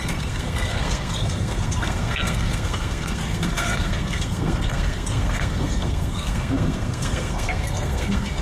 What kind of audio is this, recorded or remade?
remade